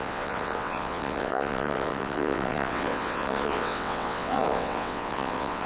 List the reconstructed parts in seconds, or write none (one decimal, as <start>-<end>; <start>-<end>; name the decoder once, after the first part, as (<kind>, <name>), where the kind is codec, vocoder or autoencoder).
0.0-5.7 (vocoder, WaveNeXt)